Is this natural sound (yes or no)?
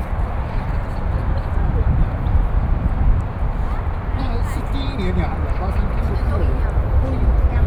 no